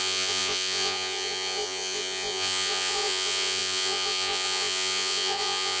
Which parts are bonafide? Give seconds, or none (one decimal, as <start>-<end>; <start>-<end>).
none